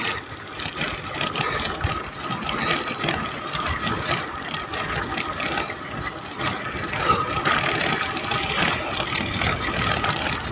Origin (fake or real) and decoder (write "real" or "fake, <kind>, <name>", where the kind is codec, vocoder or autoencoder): real